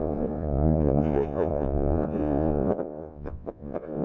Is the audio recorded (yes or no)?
no